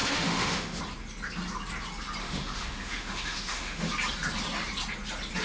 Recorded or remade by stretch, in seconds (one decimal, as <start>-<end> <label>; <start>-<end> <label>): 0.0-0.8 remade; 0.8-2.2 recorded; 2.2-3.9 remade; 3.9-5.4 recorded